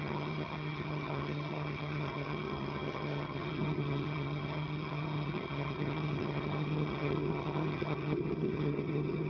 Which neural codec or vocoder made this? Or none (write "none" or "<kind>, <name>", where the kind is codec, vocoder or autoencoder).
vocoder, HiFi-GAN